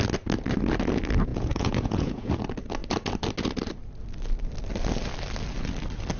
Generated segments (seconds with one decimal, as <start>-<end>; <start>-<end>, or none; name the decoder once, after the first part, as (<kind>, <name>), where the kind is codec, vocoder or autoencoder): 1.3-2.3 (vocoder, Vocos)